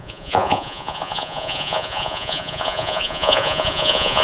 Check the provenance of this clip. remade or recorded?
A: remade